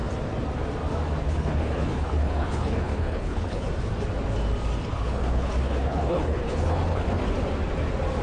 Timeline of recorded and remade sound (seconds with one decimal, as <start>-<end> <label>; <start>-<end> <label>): 0.0-1.2 recorded; 1.2-3.7 remade; 3.7-4.9 recorded; 4.9-7.2 remade; 7.2-8.2 recorded